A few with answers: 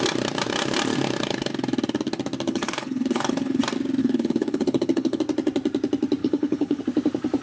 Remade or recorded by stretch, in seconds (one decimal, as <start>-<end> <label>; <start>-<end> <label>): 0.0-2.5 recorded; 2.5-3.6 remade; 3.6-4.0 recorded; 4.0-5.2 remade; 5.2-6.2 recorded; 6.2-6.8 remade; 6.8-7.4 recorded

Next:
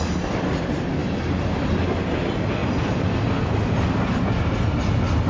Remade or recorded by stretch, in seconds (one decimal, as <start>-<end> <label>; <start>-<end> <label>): 0.0-5.3 recorded

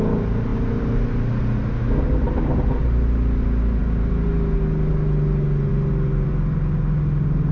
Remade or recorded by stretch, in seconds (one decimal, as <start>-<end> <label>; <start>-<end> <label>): 0.0-7.5 recorded

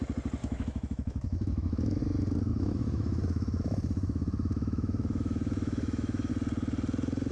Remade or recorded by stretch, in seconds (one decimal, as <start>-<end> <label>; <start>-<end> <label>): 0.0-0.4 recorded; 0.4-2.0 remade; 2.0-2.5 recorded; 2.5-6.3 remade; 6.3-7.3 recorded

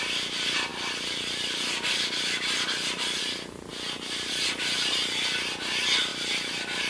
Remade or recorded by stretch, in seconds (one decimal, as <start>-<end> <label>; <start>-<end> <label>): 0.0-0.7 recorded; 0.7-3.2 remade; 3.2-3.7 recorded; 3.7-4.3 remade; 4.3-6.1 recorded; 6.1-6.9 remade